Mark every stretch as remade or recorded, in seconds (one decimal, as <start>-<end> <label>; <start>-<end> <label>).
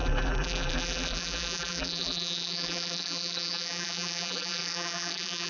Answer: 0.0-5.5 remade